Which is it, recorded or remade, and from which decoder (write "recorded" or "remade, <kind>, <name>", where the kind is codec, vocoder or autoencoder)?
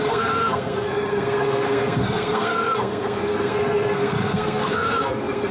remade, codec, SNAC